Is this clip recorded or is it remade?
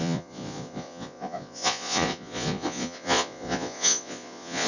remade